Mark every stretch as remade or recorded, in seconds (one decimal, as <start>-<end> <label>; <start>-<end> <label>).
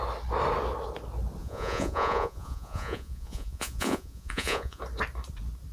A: 0.0-1.4 recorded; 1.4-4.8 remade; 4.8-5.7 recorded